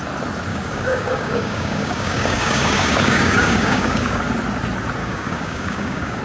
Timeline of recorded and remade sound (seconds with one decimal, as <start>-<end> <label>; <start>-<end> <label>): 0.0-0.5 recorded; 0.5-4.2 remade; 4.2-5.0 recorded; 5.0-6.2 remade